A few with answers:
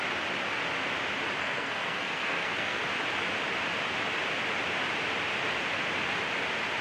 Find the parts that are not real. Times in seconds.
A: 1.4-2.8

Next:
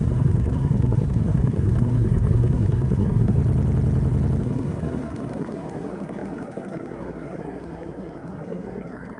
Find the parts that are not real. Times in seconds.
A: 0.0-3.4; 4.4-9.2

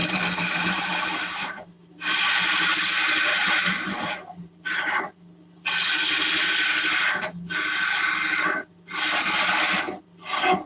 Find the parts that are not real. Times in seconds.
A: 0.0-2.8; 3.3-5.0

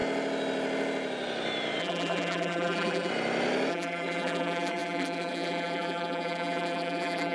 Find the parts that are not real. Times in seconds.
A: 1.8-3.1; 3.7-7.3

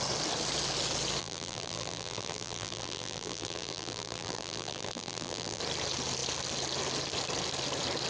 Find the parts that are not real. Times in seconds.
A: 1.2-5.6

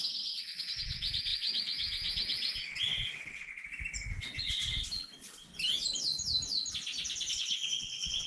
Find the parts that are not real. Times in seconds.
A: 0.0-3.5; 4.1-5.5; 7.3-8.3

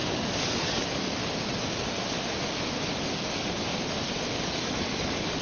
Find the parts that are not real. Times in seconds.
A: 0.0-1.2; 4.4-5.4